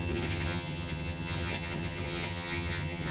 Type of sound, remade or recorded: remade